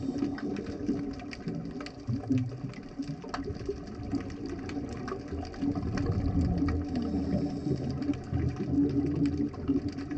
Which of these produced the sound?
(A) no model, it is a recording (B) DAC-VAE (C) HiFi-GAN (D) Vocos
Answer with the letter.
A